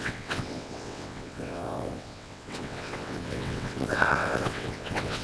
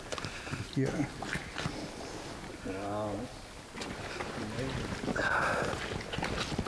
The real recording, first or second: second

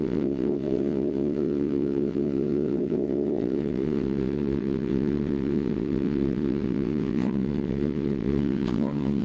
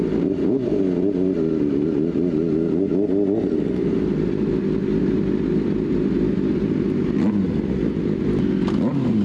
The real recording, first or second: second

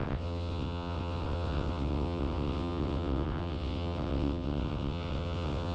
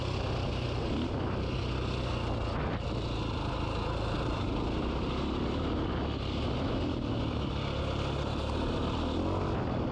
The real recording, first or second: second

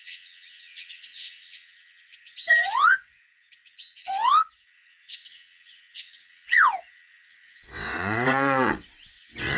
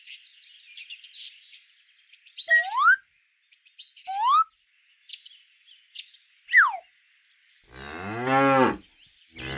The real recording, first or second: second